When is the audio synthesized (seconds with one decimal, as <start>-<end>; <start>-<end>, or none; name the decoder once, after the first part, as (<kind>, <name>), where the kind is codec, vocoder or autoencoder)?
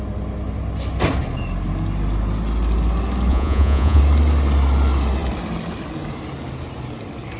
3.3-4.0 (vocoder, Vocos)